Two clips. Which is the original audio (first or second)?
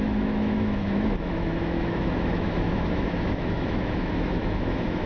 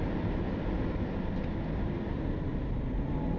second